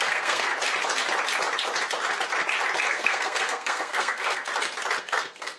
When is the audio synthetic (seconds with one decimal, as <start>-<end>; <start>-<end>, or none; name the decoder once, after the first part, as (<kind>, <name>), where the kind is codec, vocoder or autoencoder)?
0.0-0.5 (codec, SNAC); 2.9-4.5; 5.0-5.6